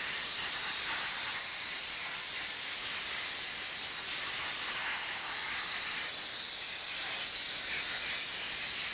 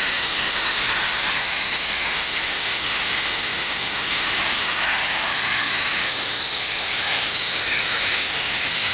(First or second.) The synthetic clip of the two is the second